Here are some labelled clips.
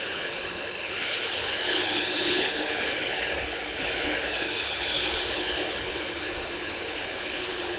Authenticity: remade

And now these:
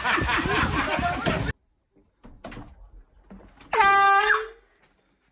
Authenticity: recorded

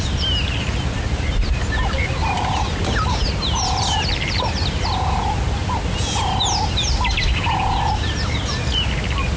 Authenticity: recorded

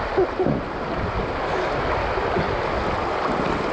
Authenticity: recorded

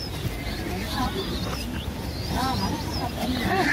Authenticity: recorded